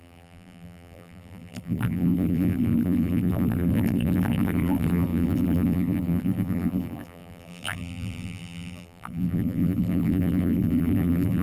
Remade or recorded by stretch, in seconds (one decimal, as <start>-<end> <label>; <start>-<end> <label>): 0.0-11.4 remade